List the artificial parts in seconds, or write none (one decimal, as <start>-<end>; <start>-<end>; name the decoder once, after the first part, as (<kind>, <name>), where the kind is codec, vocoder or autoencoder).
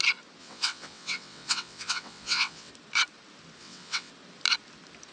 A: 0.4-2.7 (vocoder, WaveNeXt); 3.6-4.1